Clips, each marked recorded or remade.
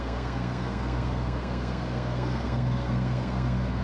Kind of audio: remade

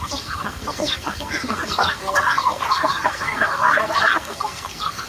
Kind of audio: remade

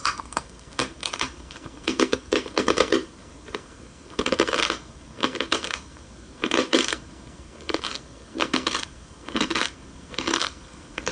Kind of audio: remade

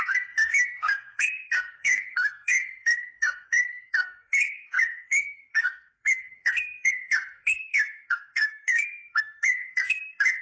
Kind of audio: remade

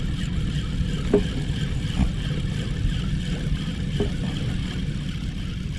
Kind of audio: recorded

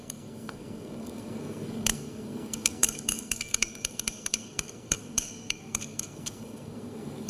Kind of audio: remade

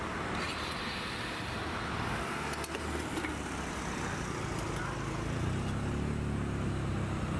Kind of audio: recorded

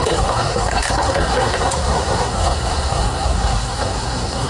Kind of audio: remade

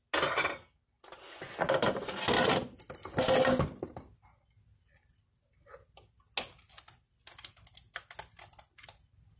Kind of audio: recorded